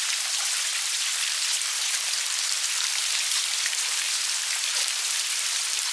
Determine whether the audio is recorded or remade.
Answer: remade